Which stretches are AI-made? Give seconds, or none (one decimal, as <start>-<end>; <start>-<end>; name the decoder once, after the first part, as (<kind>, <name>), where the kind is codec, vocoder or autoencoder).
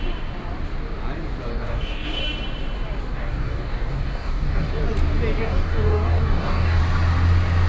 1.5-2.2 (codec, DAC); 3.1-4.8; 5.4-6.8